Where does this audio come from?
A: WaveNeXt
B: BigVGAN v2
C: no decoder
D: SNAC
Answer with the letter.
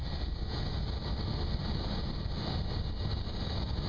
C